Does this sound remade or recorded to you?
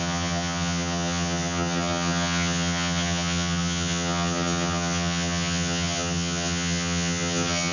remade